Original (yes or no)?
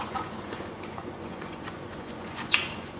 no